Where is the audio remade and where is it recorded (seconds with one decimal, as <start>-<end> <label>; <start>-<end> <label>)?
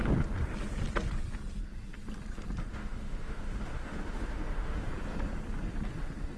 0.0-2.7 recorded; 2.7-4.9 remade; 4.9-6.4 recorded